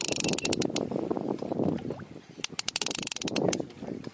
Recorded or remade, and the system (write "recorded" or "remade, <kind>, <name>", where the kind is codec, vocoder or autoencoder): recorded